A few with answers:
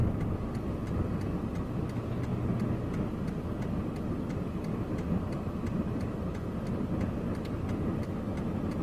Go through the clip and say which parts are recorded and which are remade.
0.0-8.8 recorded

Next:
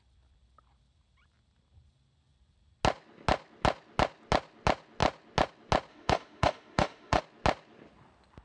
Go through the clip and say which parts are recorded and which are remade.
0.0-5.9 recorded; 5.9-7.2 remade; 7.2-8.4 recorded

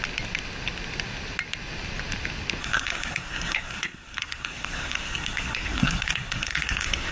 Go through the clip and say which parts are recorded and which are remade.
0.0-2.6 recorded; 2.6-7.1 remade

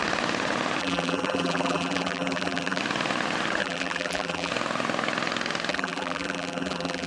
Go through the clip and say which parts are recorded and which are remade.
0.0-0.8 recorded; 0.8-2.8 remade; 2.8-3.6 recorded; 3.6-4.5 remade; 4.5-5.7 recorded; 5.7-7.1 remade